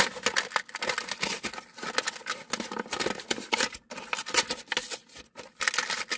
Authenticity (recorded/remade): recorded